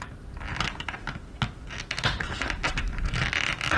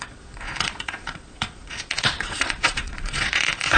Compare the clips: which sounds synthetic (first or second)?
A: second